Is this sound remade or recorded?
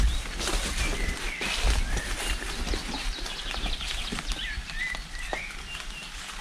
recorded